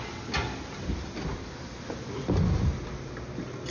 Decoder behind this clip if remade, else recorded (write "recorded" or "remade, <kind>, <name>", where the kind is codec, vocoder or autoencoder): recorded